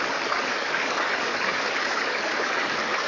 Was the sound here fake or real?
fake